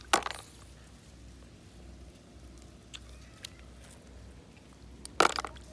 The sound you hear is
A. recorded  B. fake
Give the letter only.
A